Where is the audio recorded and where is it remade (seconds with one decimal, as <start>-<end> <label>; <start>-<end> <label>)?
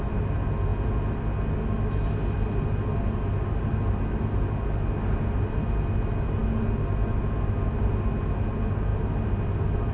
0.0-9.9 recorded